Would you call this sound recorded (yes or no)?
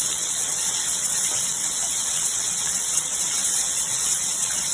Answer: no